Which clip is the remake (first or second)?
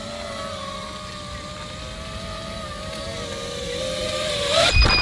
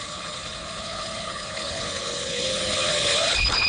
second